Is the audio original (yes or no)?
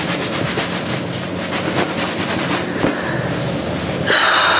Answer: yes